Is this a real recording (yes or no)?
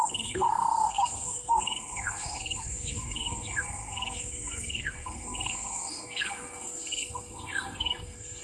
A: no